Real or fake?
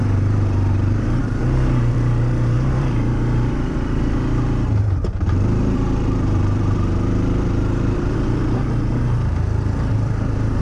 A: fake